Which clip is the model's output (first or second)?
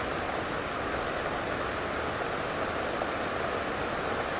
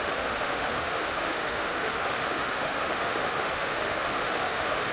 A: second